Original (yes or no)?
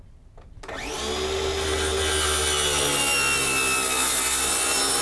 yes